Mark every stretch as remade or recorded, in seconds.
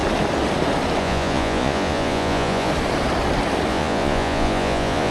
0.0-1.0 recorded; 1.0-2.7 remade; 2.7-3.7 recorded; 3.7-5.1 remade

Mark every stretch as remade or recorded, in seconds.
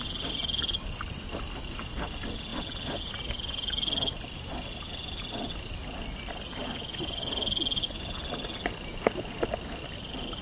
0.0-10.4 recorded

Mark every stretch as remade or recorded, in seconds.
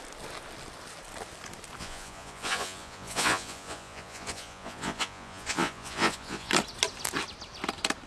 0.0-1.8 recorded; 1.8-6.5 remade; 6.5-8.1 recorded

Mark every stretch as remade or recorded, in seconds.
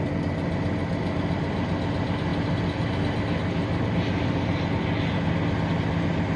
0.0-6.4 recorded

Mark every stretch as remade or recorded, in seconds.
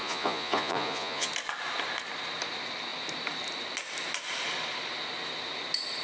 0.0-1.3 remade; 1.3-6.0 recorded